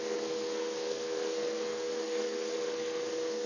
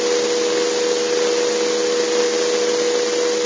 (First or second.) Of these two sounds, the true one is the second